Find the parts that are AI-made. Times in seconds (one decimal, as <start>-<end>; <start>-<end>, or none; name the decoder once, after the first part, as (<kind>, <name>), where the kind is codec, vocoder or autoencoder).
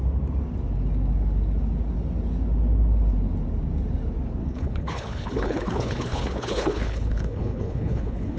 4.4-8.4 (codec, HILCodec)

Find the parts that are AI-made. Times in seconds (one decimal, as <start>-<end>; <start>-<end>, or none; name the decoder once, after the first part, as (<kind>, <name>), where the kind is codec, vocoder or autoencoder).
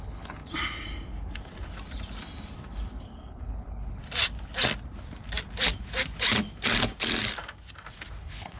0.0-0.4 (codec, HILCodec); 3.0-4.0; 8.2-8.6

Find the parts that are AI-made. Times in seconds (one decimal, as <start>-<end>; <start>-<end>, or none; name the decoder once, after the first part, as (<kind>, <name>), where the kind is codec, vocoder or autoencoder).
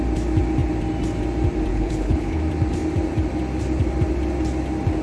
1.7-2.4 (codec, HILCodec)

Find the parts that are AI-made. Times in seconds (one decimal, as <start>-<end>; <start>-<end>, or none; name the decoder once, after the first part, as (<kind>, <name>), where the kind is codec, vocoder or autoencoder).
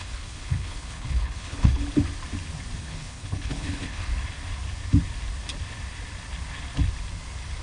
0.0-1.8 (codec, HILCodec); 2.8-4.1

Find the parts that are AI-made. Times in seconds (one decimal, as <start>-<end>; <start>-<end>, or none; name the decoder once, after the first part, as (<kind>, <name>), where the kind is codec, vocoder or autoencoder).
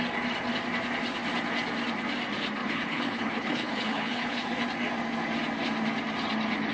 2.6-4.4 (codec, HILCodec)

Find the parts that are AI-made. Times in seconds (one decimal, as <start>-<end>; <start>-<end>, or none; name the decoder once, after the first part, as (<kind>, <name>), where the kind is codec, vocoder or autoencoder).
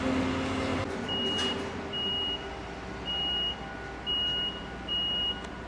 none